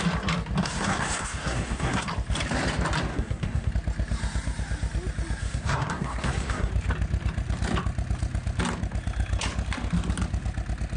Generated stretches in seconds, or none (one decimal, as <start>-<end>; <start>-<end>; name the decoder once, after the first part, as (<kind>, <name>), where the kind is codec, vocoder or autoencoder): 0.6-2.1 (codec, SNAC); 3.1-3.7; 5.4-6.7